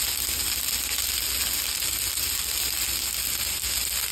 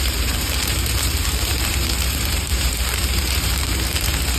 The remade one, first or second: second